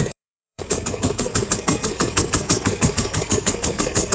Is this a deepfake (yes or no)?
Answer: yes